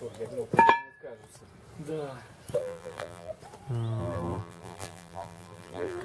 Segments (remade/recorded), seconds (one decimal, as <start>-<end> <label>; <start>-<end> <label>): 0.0-2.6 recorded; 2.6-3.3 remade; 3.3-4.0 recorded; 4.0-6.0 remade

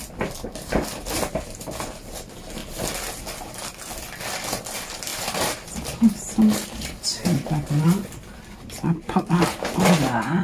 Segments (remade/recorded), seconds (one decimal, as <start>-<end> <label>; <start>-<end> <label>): 0.0-2.6 remade; 2.6-4.3 recorded; 4.3-10.4 remade

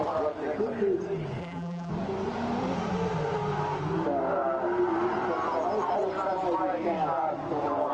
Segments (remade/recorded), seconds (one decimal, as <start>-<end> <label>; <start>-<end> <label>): 0.0-1.4 recorded; 1.4-1.9 remade; 1.9-7.9 recorded

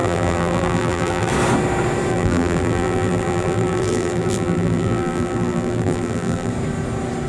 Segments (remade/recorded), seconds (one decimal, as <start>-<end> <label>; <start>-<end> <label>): 0.0-1.3 remade; 1.3-2.1 recorded; 2.1-6.5 remade; 6.5-7.3 recorded

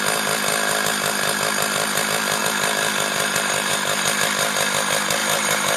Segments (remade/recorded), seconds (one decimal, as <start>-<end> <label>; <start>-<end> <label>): 0.0-5.2 recorded; 5.2-5.8 remade

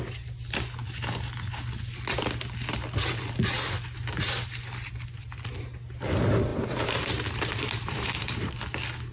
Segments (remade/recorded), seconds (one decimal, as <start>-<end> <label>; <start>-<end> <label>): 0.0-6.5 recorded; 6.5-8.5 remade; 8.5-9.1 recorded

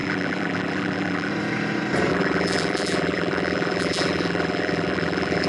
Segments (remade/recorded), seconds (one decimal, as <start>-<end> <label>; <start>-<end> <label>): 0.0-1.3 remade; 1.3-2.1 recorded; 2.1-5.5 remade